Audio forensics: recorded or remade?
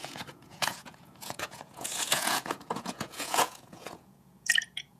remade